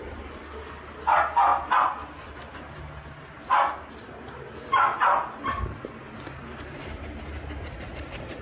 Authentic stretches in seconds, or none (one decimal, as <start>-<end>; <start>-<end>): 0.0-7.7